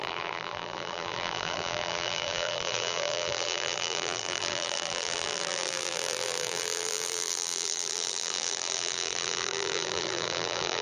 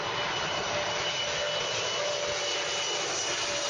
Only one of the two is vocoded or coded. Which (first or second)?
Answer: first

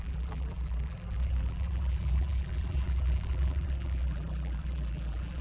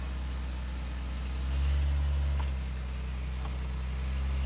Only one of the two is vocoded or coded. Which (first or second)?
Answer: first